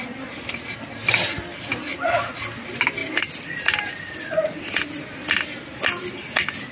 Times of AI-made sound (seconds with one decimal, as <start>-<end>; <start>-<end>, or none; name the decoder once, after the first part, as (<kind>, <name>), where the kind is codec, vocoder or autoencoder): none